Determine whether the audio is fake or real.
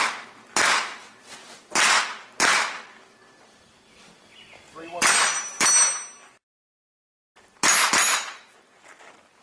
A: real